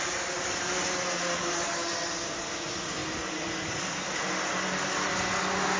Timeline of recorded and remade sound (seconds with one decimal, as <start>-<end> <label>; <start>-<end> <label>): 0.0-5.8 recorded